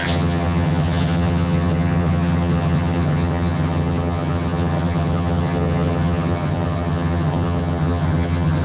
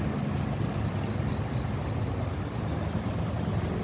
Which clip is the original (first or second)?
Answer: second